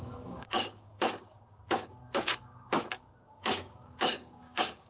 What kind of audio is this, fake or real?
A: fake